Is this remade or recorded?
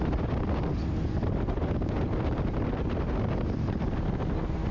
recorded